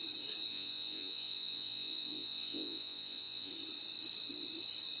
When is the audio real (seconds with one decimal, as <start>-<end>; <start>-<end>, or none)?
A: 0.0-0.5; 3.5-5.0